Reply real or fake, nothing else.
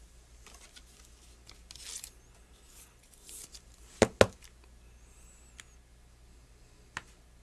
real